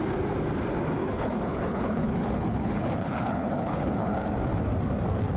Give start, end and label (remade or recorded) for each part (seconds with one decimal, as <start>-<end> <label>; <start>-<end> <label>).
0.0-1.0 recorded; 1.0-4.2 remade; 4.2-5.4 recorded